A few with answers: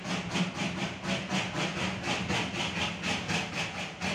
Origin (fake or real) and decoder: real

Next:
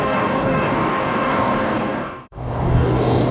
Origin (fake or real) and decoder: fake, codec, DAC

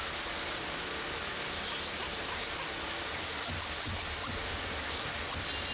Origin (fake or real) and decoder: real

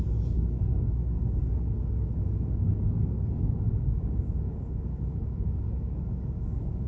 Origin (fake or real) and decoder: fake, codec, DAC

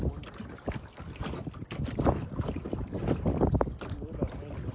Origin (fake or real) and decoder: real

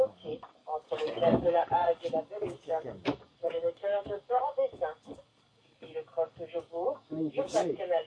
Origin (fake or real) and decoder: fake, codec, DAC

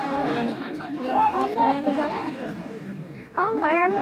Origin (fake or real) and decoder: fake, codec, DAC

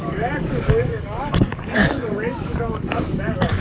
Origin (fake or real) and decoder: fake, codec, DAC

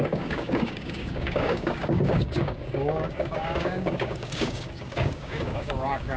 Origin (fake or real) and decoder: fake, codec, DAC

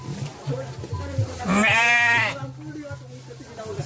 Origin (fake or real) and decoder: real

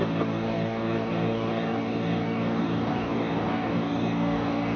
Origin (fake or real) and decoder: fake, codec, DAC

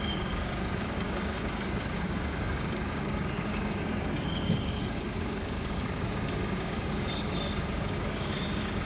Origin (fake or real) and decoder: fake, codec, DAC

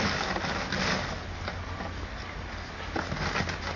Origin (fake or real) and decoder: real